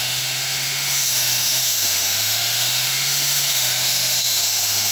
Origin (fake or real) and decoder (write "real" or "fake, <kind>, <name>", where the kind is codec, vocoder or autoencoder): fake, autoencoder, DAC-VAE